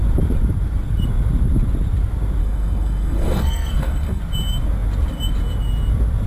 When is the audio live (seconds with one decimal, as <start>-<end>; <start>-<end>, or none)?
0.0-2.4; 4.2-6.3